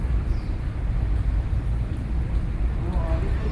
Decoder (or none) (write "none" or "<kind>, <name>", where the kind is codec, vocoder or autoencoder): none